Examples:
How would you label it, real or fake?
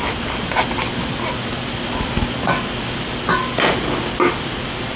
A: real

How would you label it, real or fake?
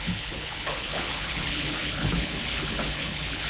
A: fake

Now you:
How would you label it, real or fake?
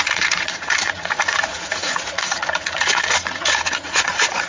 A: fake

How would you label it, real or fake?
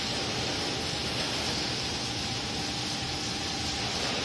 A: real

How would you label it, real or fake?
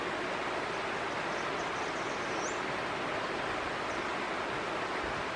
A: real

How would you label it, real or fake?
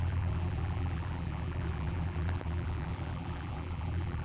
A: fake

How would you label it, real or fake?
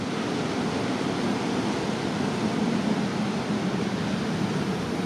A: real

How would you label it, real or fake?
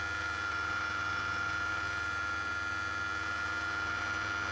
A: real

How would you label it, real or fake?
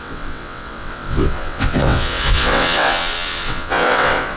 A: fake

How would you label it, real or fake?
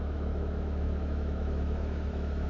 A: fake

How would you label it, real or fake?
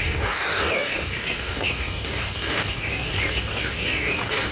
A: fake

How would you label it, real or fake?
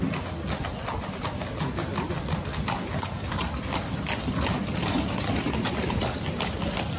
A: real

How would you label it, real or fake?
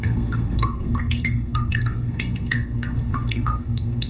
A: fake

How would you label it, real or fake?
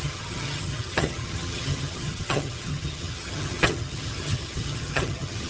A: fake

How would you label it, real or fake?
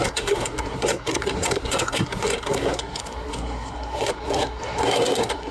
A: fake